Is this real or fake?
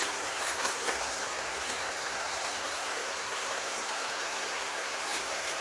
fake